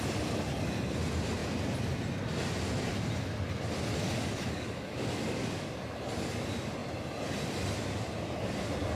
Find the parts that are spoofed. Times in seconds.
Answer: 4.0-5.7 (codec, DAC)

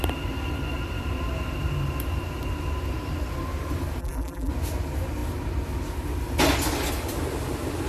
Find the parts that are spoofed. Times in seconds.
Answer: 4.0-4.5 (vocoder, BigVGAN v2)